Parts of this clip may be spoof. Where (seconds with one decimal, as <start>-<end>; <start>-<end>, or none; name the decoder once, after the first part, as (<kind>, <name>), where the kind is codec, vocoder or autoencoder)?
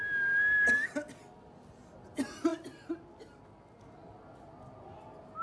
none